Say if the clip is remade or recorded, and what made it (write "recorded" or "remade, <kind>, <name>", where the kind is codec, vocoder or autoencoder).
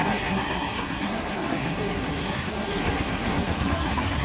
remade, codec, SNAC